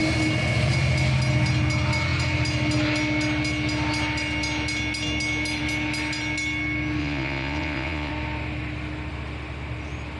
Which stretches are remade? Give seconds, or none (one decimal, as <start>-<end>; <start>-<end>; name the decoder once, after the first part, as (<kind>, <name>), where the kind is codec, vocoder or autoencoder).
7.0-8.1 (vocoder, Vocos)